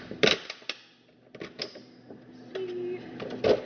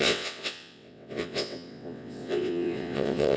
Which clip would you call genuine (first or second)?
first